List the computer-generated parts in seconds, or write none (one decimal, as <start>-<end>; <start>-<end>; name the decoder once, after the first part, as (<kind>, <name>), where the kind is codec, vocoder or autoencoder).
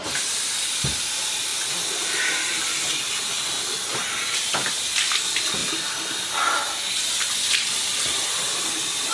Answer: 3.9-5.0 (vocoder, BigVGAN v2)